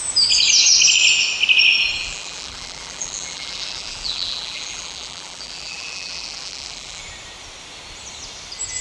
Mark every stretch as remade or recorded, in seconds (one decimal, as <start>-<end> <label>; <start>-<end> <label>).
0.0-2.0 recorded; 2.0-7.0 remade; 7.0-8.8 recorded

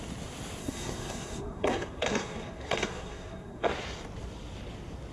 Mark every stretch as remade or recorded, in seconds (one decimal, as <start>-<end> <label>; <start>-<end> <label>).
0.0-0.6 recorded; 0.6-3.7 remade; 3.7-5.1 recorded

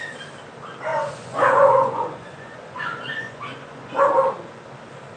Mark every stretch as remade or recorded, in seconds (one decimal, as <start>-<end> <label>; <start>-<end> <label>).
0.0-0.9 recorded; 0.9-4.0 remade; 4.0-5.2 recorded